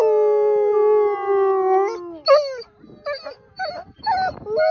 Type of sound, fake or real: real